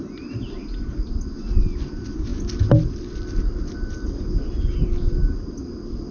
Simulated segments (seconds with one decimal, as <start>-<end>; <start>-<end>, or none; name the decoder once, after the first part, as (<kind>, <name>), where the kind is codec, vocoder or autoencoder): none